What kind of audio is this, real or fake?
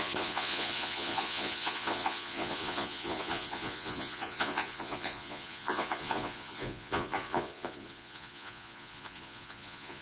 fake